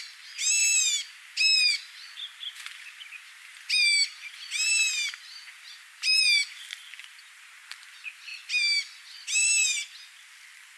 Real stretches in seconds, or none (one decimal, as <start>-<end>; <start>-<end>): 0.0-0.6; 4.3-4.7; 6.1-10.8